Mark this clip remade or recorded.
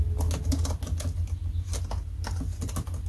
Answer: recorded